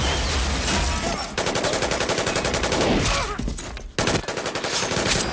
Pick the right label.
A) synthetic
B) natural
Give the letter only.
B